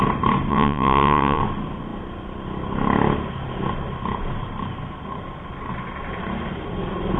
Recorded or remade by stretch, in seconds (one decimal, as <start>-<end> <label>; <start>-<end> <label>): 0.0-0.5 recorded; 0.5-1.4 remade; 1.4-7.2 recorded